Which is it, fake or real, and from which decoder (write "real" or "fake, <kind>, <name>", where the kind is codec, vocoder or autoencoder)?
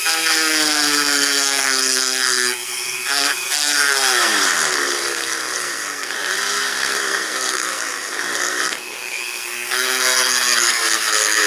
fake, codec, SNAC